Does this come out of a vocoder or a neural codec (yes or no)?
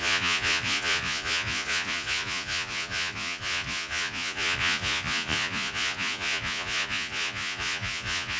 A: yes